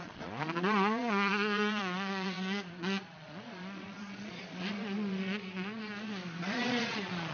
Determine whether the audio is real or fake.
fake